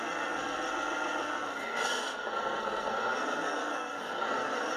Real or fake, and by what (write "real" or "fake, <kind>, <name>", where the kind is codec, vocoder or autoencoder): fake, codec, SNAC